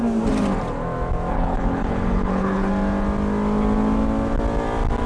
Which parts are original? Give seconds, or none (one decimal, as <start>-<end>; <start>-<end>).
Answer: 0.0-1.3; 2.7-5.1